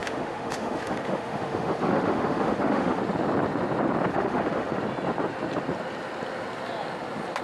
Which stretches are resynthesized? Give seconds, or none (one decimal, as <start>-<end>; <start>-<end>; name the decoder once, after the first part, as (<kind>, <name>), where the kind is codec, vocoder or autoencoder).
0.0-3.0 (autoencoder, DAC-VAE); 4.1-4.8